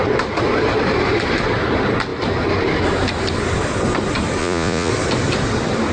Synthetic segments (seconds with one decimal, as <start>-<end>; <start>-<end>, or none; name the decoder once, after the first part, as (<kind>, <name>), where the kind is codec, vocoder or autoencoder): 4.4-4.9 (vocoder, Vocos)